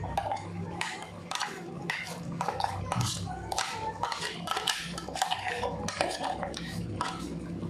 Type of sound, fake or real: fake